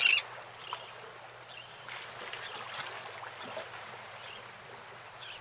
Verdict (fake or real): real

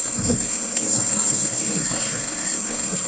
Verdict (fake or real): fake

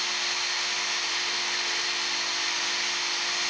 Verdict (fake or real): real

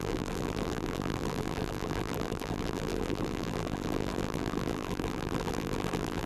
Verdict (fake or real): fake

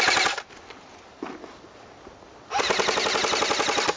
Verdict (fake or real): real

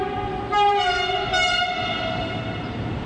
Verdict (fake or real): real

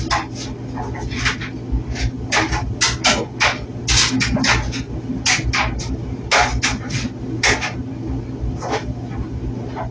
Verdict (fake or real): real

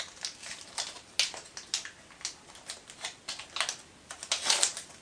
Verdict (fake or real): real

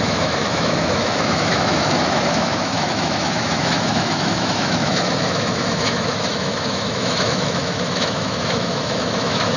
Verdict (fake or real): fake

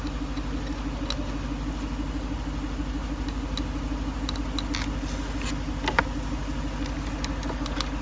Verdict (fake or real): real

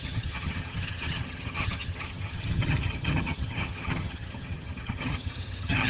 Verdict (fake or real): fake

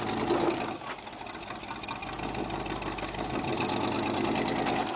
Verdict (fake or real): real